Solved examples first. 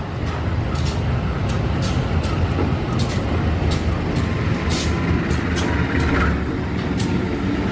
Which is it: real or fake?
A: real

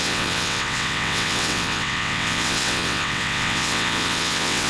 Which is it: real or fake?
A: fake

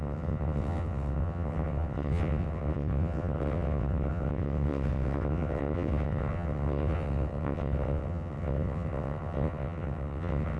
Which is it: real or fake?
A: fake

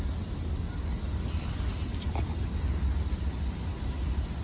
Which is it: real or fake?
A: real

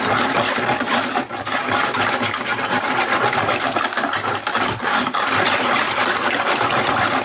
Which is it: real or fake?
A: real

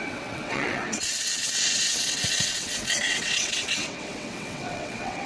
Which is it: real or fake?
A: fake